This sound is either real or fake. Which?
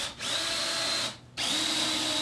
real